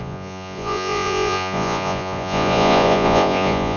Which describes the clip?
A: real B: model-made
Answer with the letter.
B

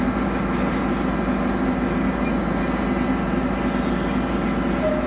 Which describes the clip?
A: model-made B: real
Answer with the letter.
B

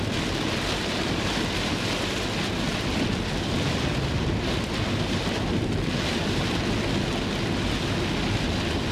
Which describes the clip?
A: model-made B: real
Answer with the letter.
B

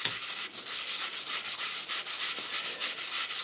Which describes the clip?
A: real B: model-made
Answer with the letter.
A